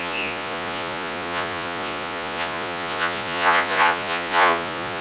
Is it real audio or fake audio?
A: fake